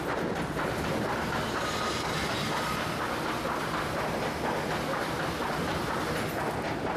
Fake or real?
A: real